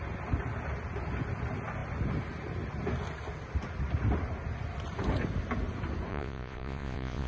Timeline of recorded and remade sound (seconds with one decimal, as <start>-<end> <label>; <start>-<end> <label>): 0.0-6.1 recorded; 6.1-7.3 remade